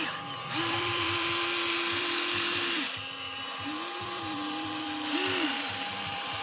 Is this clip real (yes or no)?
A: no